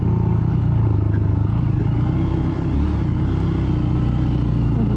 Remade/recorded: recorded